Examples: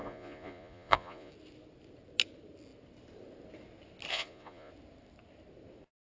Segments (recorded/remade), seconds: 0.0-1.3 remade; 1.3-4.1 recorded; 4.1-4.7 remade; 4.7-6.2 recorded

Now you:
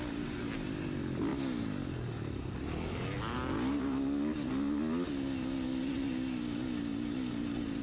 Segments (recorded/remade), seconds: 0.0-7.8 recorded

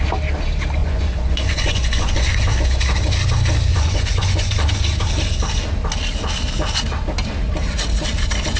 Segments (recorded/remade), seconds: 0.0-0.8 recorded; 0.8-2.5 remade; 2.5-3.7 recorded; 3.7-4.5 remade; 4.5-8.6 recorded

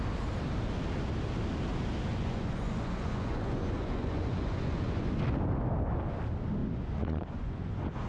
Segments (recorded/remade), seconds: 0.0-2.1 recorded; 2.1-5.1 remade; 5.1-6.6 recorded; 6.6-8.1 remade

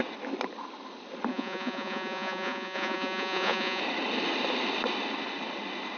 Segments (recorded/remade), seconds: 0.0-1.3 recorded; 1.3-3.8 remade; 3.8-6.0 recorded

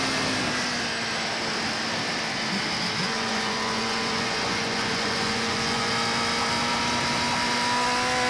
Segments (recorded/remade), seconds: 0.0-3.0 recorded; 3.0-5.9 remade; 5.9-8.3 recorded